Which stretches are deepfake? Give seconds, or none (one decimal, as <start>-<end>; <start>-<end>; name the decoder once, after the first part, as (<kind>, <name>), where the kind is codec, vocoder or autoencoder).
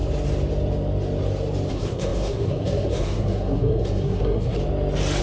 1.7-4.6 (codec, SNAC)